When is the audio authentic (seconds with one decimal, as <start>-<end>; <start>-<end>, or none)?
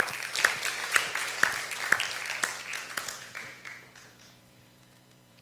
0.0-0.8; 1.4-2.7